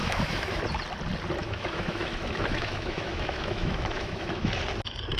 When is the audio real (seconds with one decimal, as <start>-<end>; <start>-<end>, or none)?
0.6-1.4; 4.5-5.2